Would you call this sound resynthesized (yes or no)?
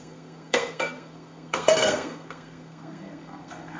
yes